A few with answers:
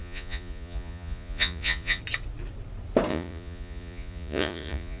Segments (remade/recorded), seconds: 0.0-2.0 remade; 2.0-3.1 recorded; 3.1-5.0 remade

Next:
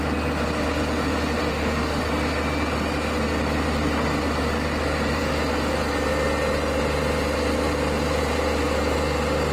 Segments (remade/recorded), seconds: 0.0-1.5 recorded; 1.5-2.0 remade; 2.0-9.5 recorded

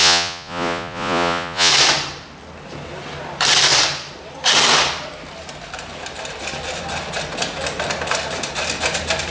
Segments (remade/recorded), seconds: 0.0-1.7 remade; 1.7-9.3 recorded

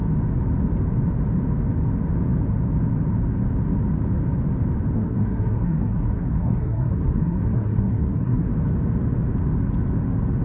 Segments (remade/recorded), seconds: 0.0-4.9 recorded; 4.9-8.5 remade; 8.5-10.4 recorded

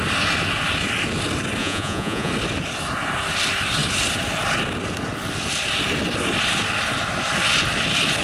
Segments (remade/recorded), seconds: 0.0-1.6 recorded; 1.6-2.3 remade; 2.3-8.2 recorded

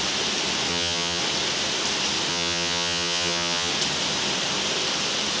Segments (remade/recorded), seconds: 0.0-0.7 recorded; 0.7-1.2 remade; 1.2-2.3 recorded; 2.3-3.7 remade; 3.7-5.4 recorded